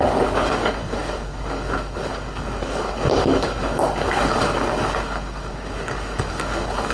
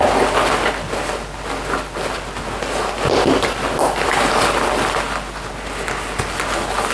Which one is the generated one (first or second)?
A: first